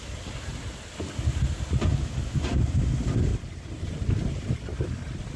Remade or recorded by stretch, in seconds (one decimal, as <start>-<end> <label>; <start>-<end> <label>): 0.0-3.3 recorded; 3.3-3.8 remade; 3.8-5.4 recorded